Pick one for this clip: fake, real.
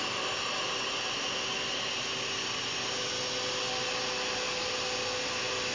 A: real